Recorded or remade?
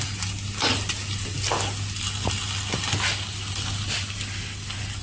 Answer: recorded